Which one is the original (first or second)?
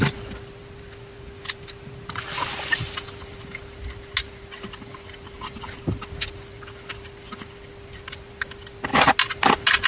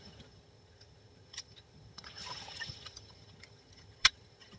first